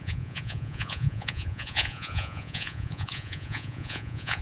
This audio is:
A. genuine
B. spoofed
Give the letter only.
B